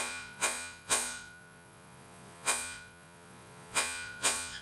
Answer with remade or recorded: remade